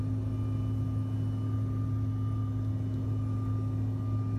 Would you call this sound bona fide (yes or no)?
yes